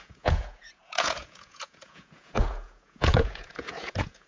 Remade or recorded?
remade